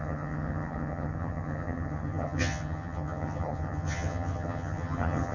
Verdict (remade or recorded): remade